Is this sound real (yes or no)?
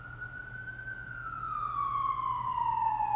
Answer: yes